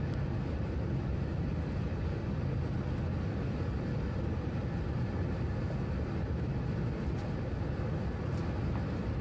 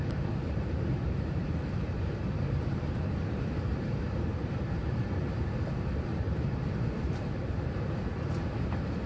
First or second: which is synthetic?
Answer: second